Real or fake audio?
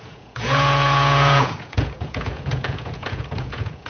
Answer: fake